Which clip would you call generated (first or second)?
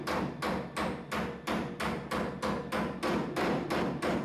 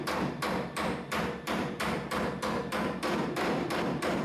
second